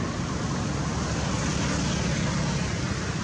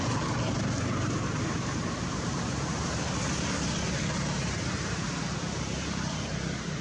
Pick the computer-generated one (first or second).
second